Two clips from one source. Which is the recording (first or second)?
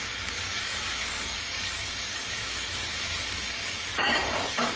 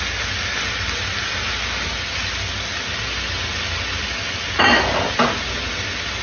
second